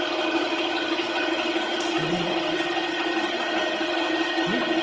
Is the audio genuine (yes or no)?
yes